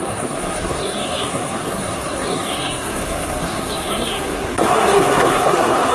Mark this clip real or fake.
fake